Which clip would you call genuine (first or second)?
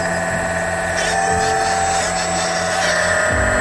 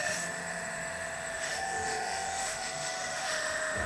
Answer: first